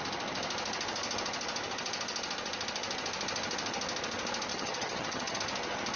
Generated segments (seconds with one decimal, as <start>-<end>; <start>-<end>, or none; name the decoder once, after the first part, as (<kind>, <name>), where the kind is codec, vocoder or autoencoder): 4.5-5.4 (vocoder, HiFi-GAN)